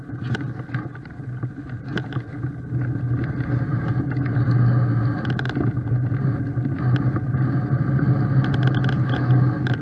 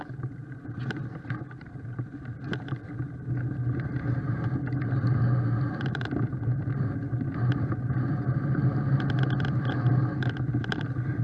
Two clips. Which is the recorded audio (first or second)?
first